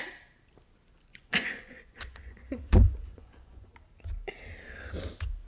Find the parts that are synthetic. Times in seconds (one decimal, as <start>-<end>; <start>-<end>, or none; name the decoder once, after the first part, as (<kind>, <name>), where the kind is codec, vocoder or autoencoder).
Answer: 1.1-3.7 (vocoder, Vocos)